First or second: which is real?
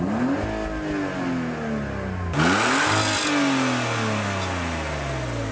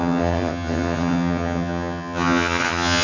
first